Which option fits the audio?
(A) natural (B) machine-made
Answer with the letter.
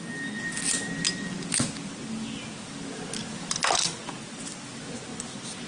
A